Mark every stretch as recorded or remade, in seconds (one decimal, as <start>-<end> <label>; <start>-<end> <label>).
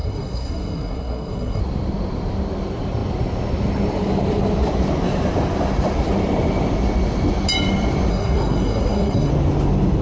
0.0-1.6 remade; 1.6-8.1 recorded; 8.1-9.3 remade; 9.3-10.0 recorded